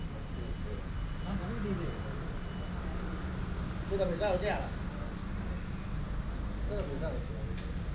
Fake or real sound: real